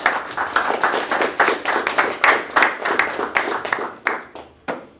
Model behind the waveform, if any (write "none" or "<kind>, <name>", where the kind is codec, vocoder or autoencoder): none